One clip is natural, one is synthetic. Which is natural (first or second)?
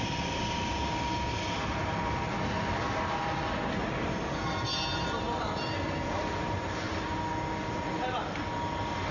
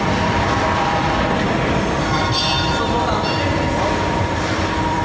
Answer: first